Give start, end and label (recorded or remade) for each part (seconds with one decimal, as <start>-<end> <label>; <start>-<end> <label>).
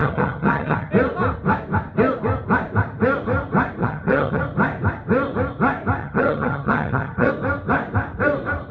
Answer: 0.0-0.9 remade; 0.9-3.8 recorded; 3.8-4.4 remade; 4.4-6.0 recorded; 6.0-7.3 remade; 7.3-8.7 recorded